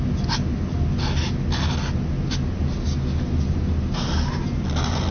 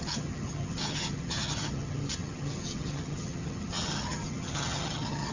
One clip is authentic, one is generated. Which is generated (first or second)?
second